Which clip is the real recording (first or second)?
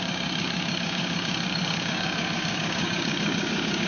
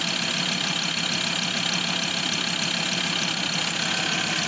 second